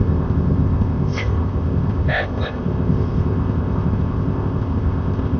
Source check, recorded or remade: remade